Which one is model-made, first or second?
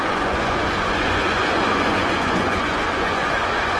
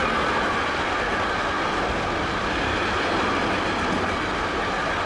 first